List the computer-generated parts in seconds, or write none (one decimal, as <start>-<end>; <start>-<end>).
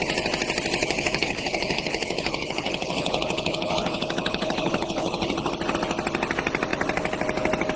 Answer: 0.8-5.5